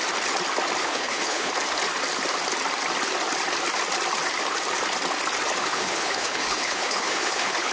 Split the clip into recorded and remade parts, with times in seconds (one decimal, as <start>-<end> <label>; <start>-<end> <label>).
0.0-0.8 recorded; 0.8-1.5 remade; 1.5-5.6 recorded; 5.6-7.7 remade